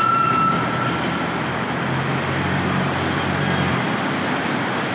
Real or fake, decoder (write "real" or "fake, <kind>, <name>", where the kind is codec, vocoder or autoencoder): real